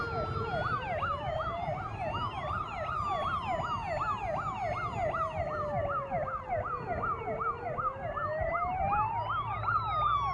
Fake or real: real